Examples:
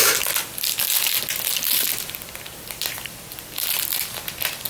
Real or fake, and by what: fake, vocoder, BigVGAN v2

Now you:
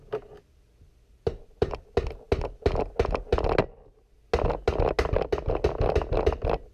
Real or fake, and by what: real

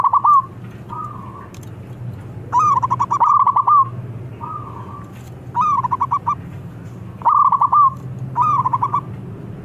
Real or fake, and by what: real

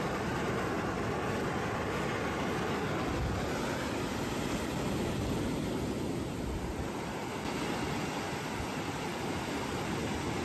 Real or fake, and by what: real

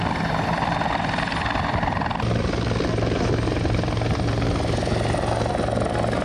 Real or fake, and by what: real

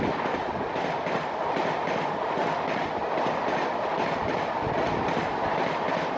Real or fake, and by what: real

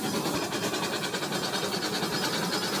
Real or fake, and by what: real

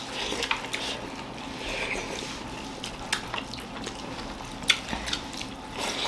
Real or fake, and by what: real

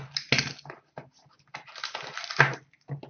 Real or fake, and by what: real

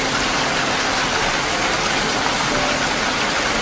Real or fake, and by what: real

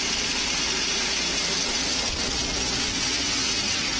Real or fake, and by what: fake, vocoder, BigVGAN v2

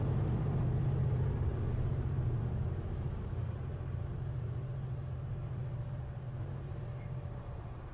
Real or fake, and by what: fake, vocoder, BigVGAN v2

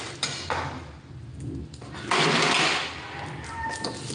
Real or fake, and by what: real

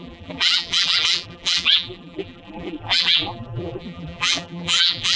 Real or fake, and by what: fake, vocoder, BigVGAN v2